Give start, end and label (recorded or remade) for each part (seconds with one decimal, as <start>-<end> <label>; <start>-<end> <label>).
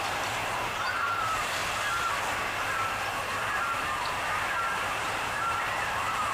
0.0-1.6 remade; 1.6-4.8 recorded; 4.8-6.3 remade